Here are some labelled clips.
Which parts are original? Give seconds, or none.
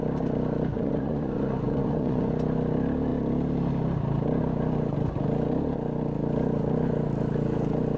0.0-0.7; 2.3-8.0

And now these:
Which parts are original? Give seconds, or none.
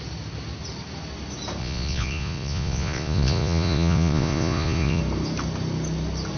0.0-1.6; 5.0-6.4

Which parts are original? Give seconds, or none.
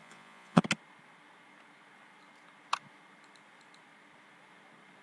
0.6-5.0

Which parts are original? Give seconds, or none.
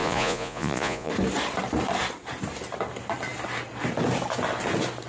1.1-5.1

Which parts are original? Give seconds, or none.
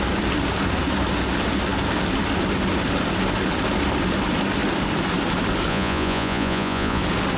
0.0-5.7; 7.0-7.4